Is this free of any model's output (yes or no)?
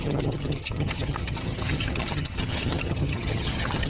no